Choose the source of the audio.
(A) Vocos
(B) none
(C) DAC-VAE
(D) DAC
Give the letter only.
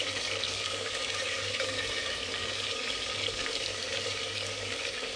D